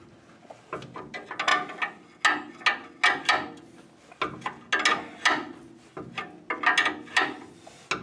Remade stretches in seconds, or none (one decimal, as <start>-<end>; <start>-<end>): none